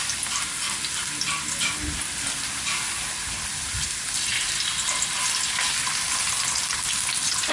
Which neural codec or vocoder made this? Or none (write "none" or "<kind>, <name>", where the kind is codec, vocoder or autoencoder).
none